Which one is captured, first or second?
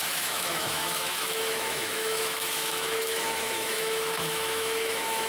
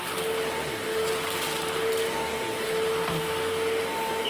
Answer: second